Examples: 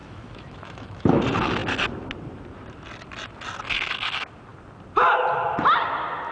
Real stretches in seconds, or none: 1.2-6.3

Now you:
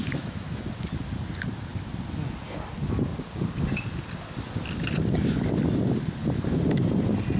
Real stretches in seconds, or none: 0.6-7.4

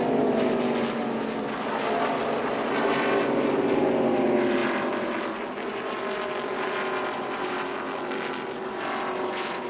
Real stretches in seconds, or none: 0.0-9.7

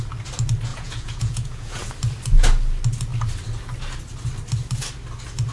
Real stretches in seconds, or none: 0.0-0.7; 1.9-5.5

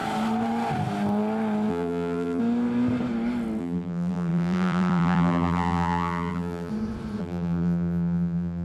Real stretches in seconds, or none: 0.0-1.7; 2.4-3.6; 6.7-7.2

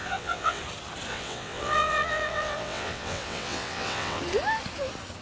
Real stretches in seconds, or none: 0.6-1.1; 4.2-5.2

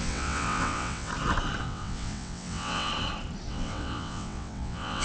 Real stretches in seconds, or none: 1.1-1.6; 2.9-3.5